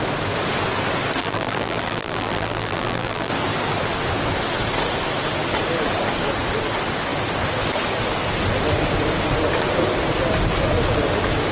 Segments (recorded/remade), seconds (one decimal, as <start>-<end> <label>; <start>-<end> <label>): 0.0-1.2 recorded; 1.2-3.3 remade; 3.3-11.5 recorded